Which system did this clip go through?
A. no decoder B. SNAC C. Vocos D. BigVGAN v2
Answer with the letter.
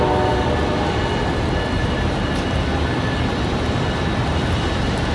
A